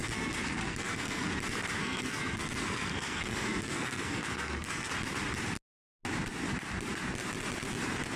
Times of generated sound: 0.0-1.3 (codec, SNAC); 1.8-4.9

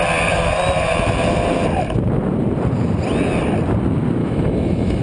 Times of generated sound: 4.2-5.0 (autoencoder, DAC-VAE)

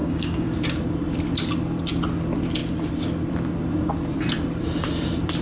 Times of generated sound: 0.0-0.5 (codec, DAC)

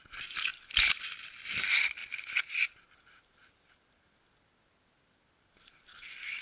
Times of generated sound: none